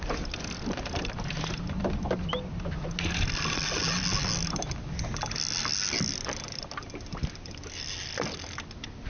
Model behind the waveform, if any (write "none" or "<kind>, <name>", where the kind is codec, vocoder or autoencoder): none